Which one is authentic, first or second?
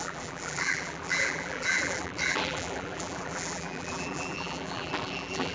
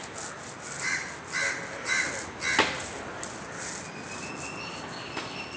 second